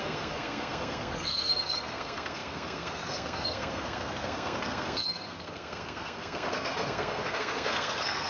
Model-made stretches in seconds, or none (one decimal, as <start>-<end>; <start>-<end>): 0.0-8.3